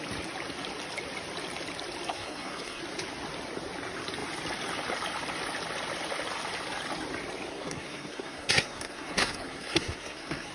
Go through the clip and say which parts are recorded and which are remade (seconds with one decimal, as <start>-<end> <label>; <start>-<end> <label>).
0.0-2.1 recorded; 2.1-2.8 remade; 2.8-7.5 recorded; 7.5-10.5 remade